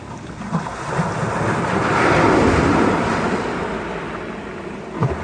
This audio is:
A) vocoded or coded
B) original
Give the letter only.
B